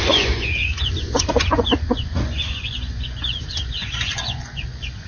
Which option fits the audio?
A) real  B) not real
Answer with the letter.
B